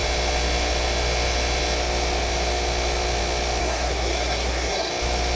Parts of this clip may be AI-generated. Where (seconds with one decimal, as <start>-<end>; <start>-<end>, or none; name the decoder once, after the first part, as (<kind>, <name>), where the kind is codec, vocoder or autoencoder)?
3.6-4.9 (codec, SNAC)